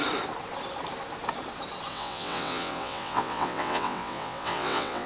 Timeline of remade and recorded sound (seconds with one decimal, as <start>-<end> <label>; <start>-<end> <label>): 0.0-1.9 recorded; 1.9-5.1 remade